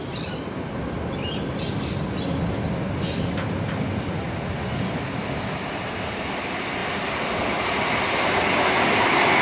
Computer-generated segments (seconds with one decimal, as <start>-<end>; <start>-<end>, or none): none